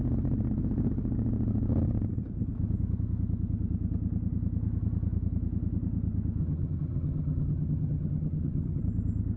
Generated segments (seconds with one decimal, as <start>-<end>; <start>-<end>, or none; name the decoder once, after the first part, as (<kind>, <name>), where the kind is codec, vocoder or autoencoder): 6.4-8.8 (vocoder, HiFi-GAN)